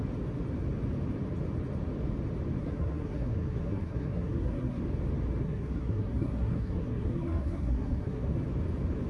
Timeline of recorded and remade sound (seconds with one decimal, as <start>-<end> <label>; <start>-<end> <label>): 0.0-2.6 recorded; 2.6-4.8 remade; 4.8-5.4 recorded; 5.4-8.4 remade; 8.4-9.1 recorded